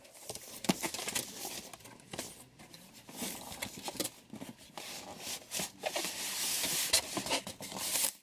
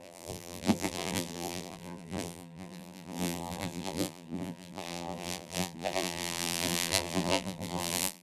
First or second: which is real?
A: first